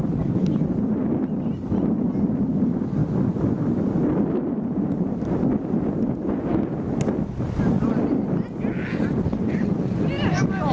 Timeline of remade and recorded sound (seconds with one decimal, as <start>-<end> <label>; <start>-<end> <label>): 0.0-10.7 recorded